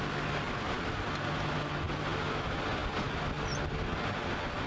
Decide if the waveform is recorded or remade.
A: recorded